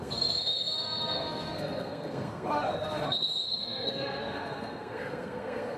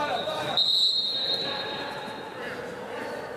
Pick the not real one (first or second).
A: first